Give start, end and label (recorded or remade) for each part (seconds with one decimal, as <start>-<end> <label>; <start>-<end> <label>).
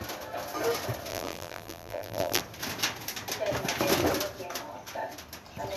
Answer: 0.0-1.1 recorded; 1.1-2.4 remade; 2.4-5.8 recorded